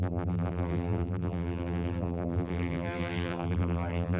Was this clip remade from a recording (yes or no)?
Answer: yes